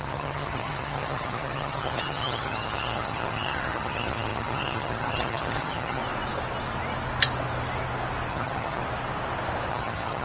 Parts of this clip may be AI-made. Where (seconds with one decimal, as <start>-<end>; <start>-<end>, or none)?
0.0-6.0; 8.3-8.8; 9.7-10.2

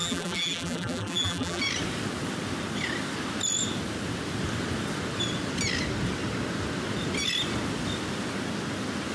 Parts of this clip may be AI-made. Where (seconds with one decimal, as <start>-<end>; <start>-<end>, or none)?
0.0-1.6

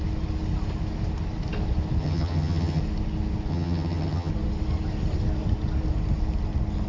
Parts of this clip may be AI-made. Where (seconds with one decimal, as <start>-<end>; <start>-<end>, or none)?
2.0-2.8; 3.5-4.3

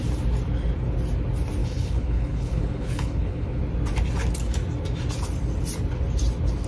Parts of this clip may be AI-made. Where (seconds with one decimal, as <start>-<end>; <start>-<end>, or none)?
1.6-3.6

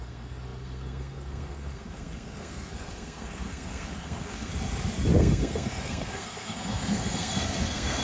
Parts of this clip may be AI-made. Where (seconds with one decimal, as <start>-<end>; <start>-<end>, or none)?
0.0-4.5; 5.2-8.0

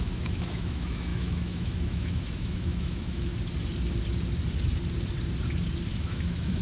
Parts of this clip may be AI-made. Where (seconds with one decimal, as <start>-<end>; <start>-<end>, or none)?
0.0-3.3; 5.9-6.6

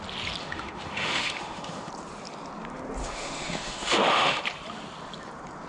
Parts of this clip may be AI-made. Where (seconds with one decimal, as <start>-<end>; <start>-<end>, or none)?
0.4-1.9; 3.0-4.4

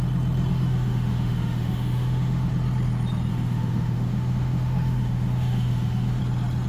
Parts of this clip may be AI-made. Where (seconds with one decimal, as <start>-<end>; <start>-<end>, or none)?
0.5-2.5; 3.3-6.2